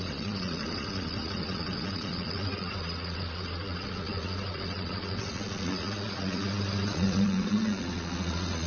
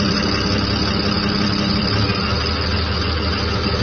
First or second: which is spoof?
first